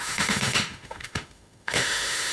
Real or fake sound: fake